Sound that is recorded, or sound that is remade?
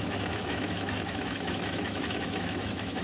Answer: remade